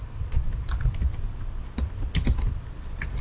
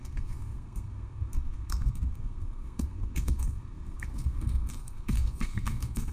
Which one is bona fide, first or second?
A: first